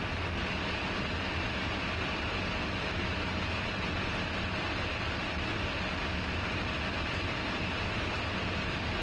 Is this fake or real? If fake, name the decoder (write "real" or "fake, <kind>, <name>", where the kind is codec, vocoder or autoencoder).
real